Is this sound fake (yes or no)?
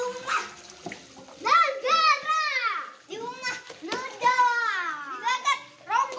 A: no